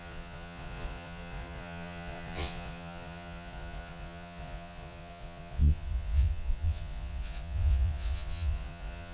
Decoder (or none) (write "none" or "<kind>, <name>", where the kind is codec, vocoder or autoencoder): vocoder, Vocos